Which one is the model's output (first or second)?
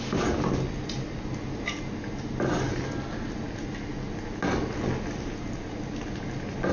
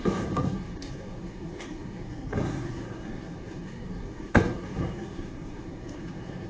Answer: second